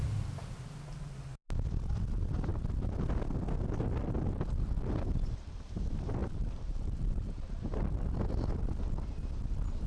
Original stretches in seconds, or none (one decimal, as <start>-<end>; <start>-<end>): 0.0-6.2; 7.1-9.9